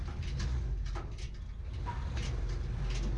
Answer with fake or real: real